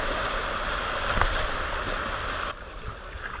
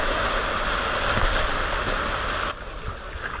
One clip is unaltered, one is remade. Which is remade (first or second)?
first